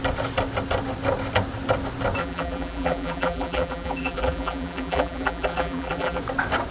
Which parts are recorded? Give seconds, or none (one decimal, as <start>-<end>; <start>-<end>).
0.0-2.2; 6.2-6.7